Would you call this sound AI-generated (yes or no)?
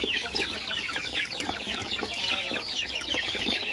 yes